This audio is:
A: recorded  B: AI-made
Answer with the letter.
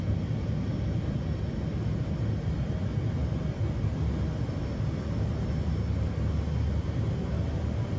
A